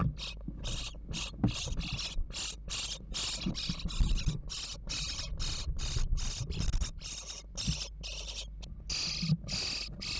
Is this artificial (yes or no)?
no